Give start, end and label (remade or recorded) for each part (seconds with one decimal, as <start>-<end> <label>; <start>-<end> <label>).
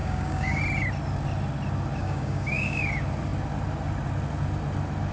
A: 0.0-0.6 remade; 0.6-2.0 recorded; 2.0-2.8 remade; 2.8-5.1 recorded